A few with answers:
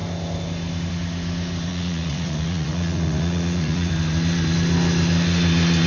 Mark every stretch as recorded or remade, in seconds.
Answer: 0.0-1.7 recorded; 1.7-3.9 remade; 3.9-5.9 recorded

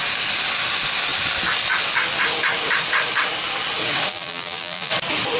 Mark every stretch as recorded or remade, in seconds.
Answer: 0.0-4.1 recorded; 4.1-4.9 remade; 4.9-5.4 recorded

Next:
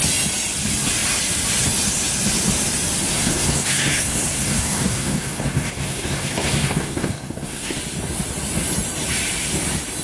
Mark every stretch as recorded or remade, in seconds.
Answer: 0.0-3.1 recorded; 3.1-7.8 remade; 7.8-10.0 recorded

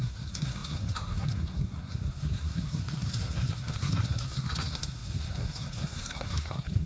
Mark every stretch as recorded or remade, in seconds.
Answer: 0.0-6.9 remade

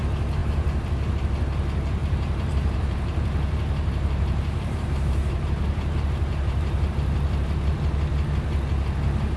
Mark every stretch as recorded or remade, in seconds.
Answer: 0.0-0.4 recorded; 0.4-1.1 remade; 1.1-2.0 recorded; 2.0-6.9 remade; 6.9-9.4 recorded